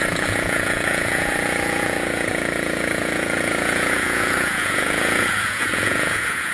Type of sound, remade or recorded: remade